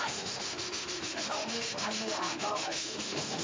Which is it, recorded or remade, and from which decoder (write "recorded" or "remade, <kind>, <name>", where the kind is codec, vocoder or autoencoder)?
remade, autoencoder, DAC-VAE